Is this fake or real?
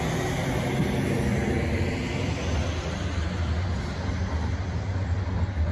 real